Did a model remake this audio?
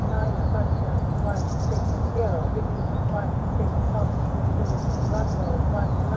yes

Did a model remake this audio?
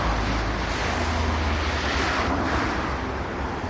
no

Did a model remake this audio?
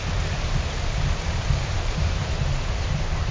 no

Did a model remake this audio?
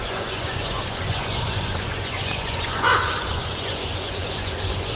yes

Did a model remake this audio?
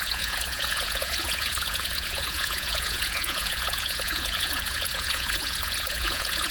yes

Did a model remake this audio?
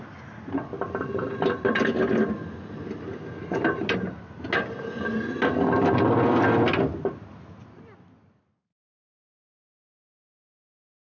no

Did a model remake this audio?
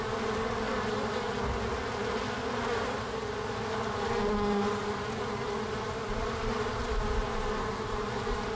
no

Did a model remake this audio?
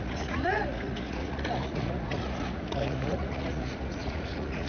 yes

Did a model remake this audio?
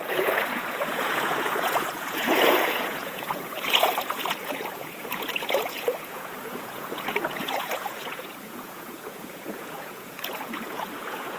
yes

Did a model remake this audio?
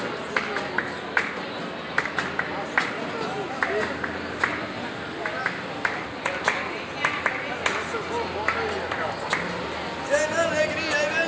no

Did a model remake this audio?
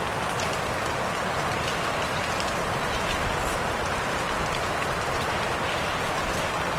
no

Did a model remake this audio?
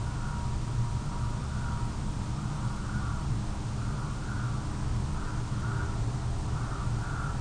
no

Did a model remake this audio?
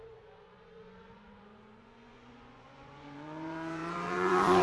yes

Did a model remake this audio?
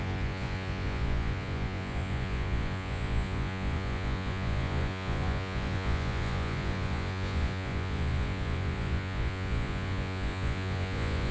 yes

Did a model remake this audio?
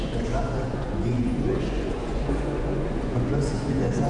yes